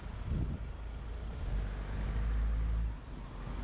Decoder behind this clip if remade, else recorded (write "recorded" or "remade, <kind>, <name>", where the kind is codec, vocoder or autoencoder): recorded